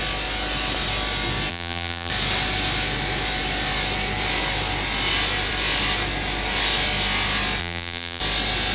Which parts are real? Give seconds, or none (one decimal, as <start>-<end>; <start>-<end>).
0.0-1.5; 2.1-7.6; 8.2-8.7